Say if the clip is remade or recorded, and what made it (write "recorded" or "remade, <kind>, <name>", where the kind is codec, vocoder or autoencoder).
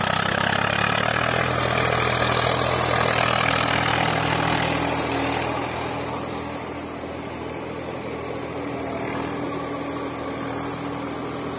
recorded